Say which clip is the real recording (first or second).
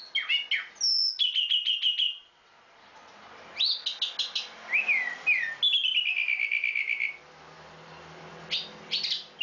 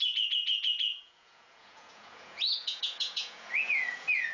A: first